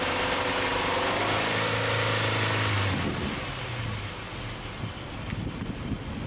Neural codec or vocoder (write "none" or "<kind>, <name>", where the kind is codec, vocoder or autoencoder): none